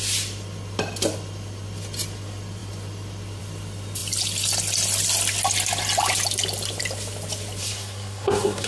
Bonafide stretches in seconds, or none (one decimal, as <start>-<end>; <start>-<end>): 0.0-7.6